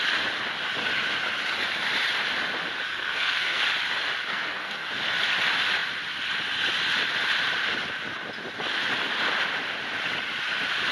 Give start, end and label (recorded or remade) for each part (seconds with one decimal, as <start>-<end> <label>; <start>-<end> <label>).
0.0-2.9 recorded; 2.9-3.6 remade; 3.6-4.2 recorded; 4.2-4.9 remade; 4.9-10.9 recorded